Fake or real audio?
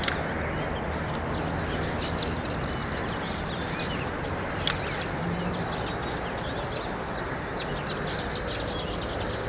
real